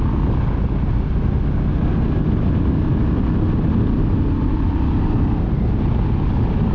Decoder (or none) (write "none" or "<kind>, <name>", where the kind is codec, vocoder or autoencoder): none